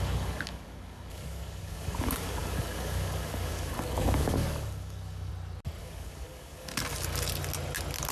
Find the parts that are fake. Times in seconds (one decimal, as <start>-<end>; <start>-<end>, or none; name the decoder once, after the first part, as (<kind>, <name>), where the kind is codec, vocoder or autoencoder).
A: 0.0-5.3 (codec, DAC); 5.8-6.7